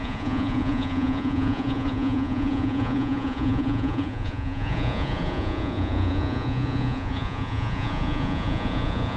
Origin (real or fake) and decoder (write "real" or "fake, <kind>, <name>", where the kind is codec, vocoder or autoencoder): fake, vocoder, Vocos